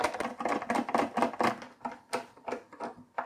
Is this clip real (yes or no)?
yes